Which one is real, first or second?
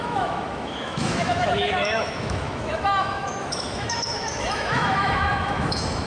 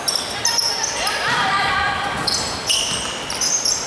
second